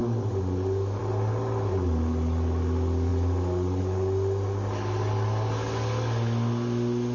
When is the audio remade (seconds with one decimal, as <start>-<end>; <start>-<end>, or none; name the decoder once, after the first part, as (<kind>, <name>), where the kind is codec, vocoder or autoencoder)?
none